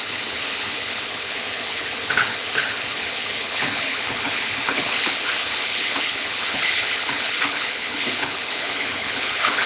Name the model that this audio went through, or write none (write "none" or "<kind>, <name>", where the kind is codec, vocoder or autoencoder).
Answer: codec, HILCodec